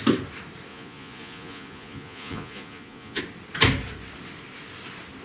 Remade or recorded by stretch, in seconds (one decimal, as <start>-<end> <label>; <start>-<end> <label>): 0.0-0.7 recorded; 0.7-3.2 remade; 3.2-5.2 recorded